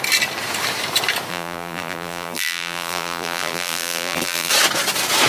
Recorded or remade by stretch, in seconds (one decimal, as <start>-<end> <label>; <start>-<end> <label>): 0.0-1.3 recorded; 1.3-4.5 remade; 4.5-5.3 recorded